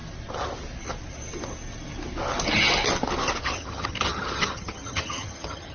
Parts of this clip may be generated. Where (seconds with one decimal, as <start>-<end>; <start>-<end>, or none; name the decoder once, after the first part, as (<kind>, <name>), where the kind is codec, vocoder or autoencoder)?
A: 3.4-5.7 (vocoder, HiFi-GAN)